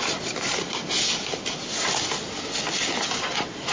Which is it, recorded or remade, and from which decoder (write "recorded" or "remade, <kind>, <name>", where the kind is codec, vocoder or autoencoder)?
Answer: recorded